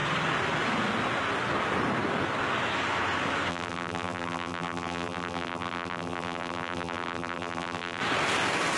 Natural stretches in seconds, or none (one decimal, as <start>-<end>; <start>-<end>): 0.0-3.5; 8.0-8.8